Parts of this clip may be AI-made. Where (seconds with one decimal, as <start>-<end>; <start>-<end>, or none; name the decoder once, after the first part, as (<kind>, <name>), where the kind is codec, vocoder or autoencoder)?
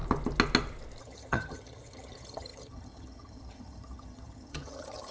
1.0-5.1 (vocoder, HiFi-GAN)